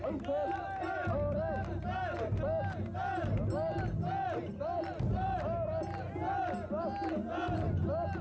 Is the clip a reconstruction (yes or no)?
no